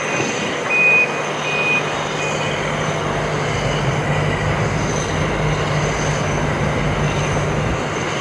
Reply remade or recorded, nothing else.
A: recorded